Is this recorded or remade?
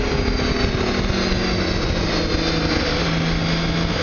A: recorded